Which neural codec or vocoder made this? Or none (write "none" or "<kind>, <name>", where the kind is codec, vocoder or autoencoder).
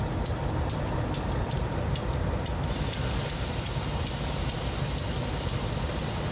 none